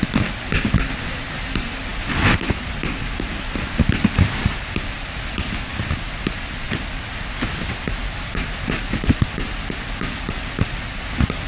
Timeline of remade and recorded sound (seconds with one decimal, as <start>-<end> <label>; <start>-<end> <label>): 0.0-11.5 recorded